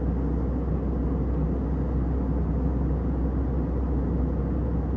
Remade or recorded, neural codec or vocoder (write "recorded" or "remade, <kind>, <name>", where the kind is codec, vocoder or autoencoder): recorded